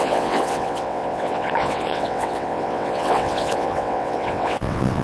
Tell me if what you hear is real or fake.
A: fake